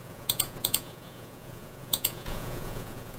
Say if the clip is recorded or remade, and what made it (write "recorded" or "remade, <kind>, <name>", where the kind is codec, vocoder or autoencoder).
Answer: remade, vocoder, Vocos